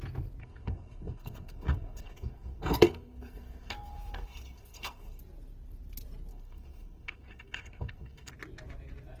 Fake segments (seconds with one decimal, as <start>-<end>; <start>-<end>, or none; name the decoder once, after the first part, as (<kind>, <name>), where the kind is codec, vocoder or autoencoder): 0.4-5.2 (codec, SNAC); 6.3-8.3